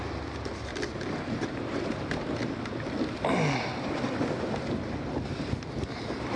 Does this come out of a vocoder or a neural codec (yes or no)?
no